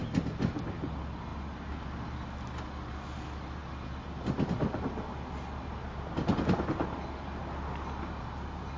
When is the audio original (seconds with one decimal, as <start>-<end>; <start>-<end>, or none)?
0.0-8.8